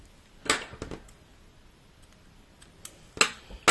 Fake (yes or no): no